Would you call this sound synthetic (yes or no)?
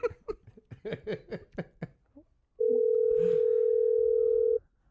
no